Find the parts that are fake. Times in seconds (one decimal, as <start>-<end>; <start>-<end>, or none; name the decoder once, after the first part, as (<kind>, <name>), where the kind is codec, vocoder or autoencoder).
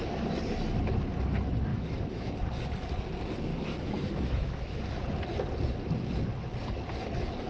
1.7-2.3 (autoencoder, DAC-VAE); 3.5-4.8